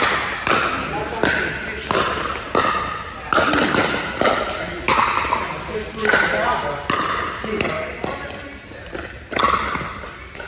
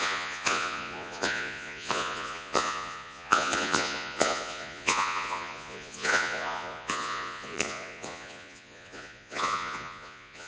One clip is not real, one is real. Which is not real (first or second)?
second